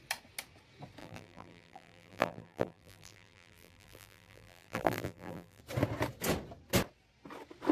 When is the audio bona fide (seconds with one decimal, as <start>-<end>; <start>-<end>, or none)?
0.0-1.0; 5.6-7.7